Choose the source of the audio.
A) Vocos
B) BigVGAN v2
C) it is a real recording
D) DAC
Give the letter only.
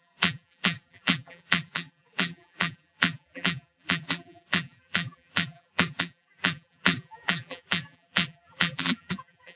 B